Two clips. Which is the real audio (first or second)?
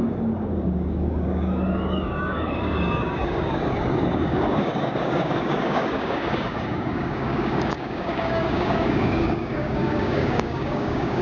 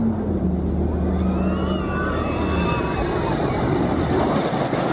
second